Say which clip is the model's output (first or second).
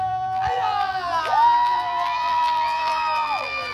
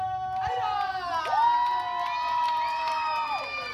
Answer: first